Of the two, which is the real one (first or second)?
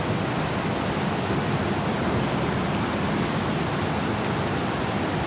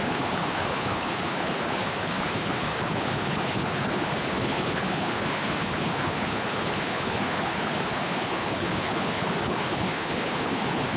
first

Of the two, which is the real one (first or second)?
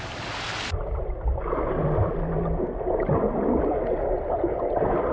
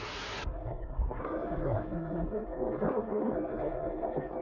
first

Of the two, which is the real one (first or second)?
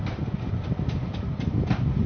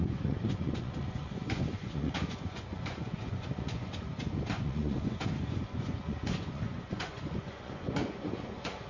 first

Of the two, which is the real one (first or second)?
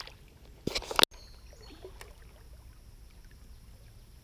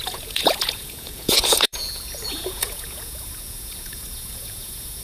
first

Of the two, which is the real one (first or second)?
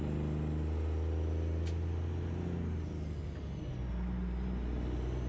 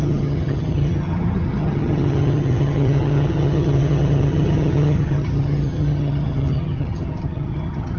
first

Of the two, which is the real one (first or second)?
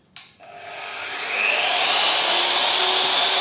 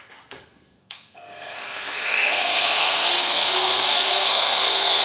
first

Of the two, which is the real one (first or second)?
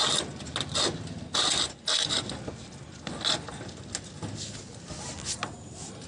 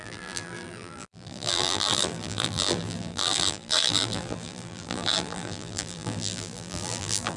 first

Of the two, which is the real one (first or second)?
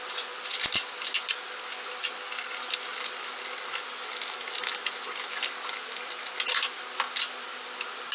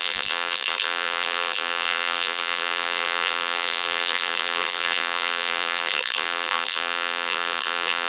first